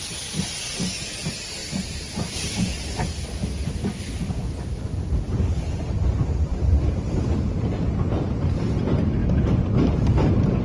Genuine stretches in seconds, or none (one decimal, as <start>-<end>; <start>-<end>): 0.0-10.6